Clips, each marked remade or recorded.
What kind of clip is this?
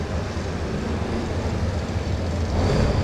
recorded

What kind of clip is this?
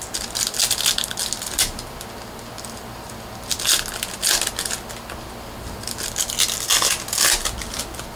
recorded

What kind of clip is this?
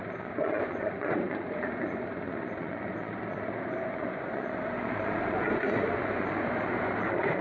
remade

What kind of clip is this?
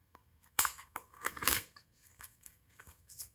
remade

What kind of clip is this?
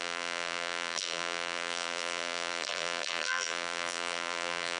remade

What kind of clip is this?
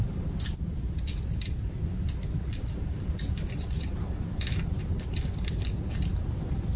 recorded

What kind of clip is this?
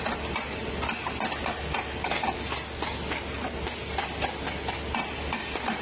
recorded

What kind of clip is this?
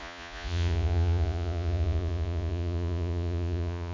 remade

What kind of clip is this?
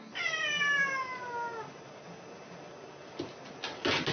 recorded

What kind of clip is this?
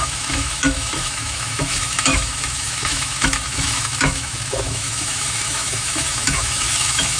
remade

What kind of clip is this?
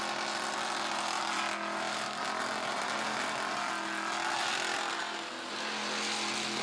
recorded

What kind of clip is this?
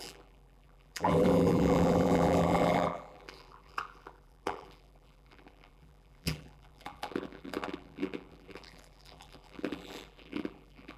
remade